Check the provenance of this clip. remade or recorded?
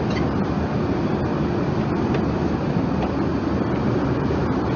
recorded